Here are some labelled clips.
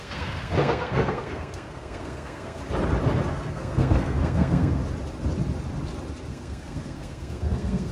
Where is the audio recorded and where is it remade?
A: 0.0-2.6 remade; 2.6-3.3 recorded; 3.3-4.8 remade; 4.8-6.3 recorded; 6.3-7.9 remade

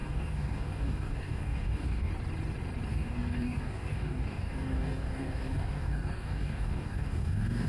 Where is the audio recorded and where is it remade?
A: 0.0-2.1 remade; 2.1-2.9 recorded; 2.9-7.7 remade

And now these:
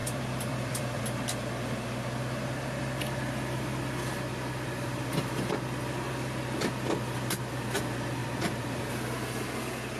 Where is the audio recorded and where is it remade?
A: 0.0-1.0 remade; 1.0-8.2 recorded; 8.2-8.8 remade; 8.8-10.0 recorded